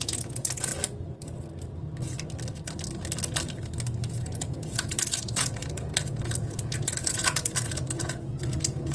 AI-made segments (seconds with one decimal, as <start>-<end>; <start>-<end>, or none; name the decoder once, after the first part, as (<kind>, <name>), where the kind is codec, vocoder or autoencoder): 0.0-0.7 (vocoder, Vocos); 4.1-8.9